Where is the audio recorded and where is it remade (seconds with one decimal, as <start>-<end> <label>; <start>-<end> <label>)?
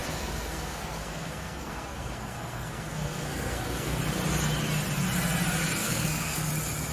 0.0-4.0 remade; 4.0-5.8 recorded; 5.8-6.5 remade; 6.5-6.9 recorded